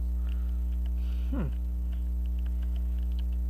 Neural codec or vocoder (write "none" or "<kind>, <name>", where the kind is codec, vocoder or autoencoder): none